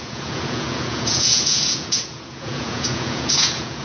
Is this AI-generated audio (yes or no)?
yes